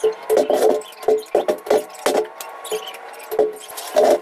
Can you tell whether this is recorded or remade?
recorded